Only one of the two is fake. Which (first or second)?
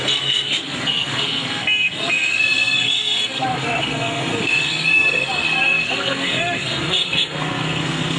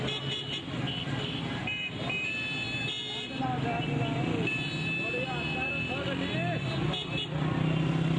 first